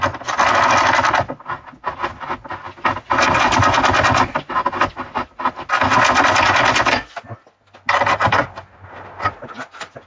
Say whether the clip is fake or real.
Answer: real